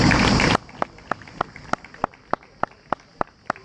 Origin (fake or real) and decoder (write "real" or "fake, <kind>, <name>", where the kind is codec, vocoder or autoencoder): real